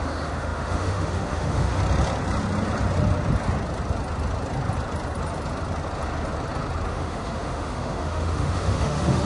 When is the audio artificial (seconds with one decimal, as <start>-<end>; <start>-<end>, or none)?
0.0-1.8; 6.9-9.3